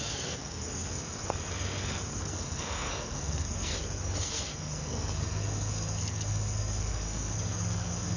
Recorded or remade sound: remade